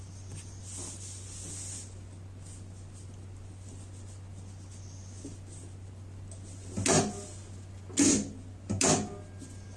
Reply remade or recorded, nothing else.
recorded